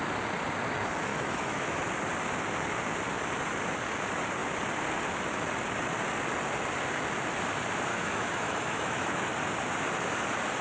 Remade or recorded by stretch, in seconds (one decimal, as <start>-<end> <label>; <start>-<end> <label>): 0.0-1.1 recorded; 1.1-1.8 remade; 1.8-7.9 recorded; 7.9-9.3 remade; 9.3-10.6 recorded